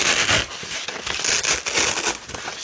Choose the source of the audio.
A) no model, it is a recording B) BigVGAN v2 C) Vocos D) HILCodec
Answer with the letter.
A